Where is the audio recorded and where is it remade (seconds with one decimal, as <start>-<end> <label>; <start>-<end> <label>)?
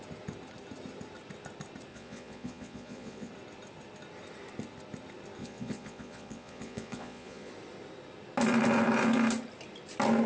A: 0.0-1.9 recorded; 1.9-3.3 remade; 3.3-5.4 recorded; 5.4-7.5 remade; 7.5-10.3 recorded